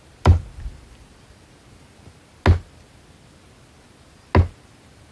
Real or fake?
real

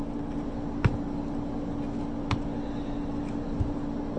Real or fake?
real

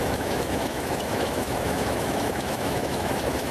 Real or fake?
fake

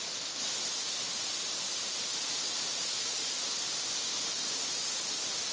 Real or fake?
real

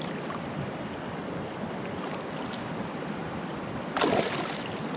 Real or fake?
real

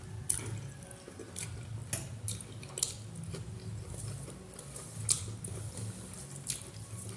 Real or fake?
real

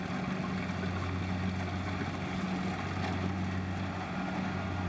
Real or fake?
real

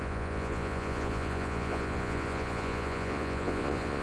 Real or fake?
fake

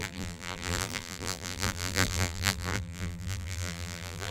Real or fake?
fake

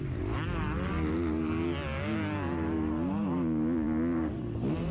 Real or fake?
real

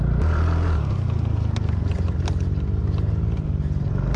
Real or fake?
real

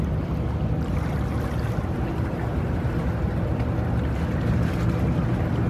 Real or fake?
real